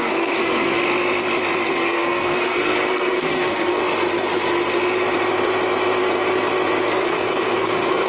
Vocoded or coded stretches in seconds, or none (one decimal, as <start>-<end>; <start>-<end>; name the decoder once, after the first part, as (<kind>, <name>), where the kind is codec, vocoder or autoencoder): 0.0-0.8 (codec, SNAC); 1.7-3.8; 6.9-8.1